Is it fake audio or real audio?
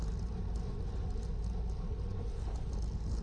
real